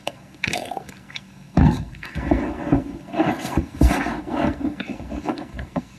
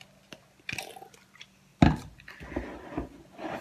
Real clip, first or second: second